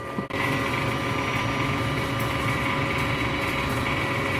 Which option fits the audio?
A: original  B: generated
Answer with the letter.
A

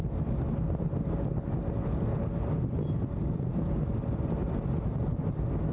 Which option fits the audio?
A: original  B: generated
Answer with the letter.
A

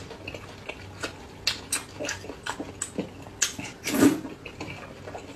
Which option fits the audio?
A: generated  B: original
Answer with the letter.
B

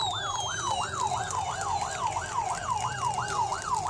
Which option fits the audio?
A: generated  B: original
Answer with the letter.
B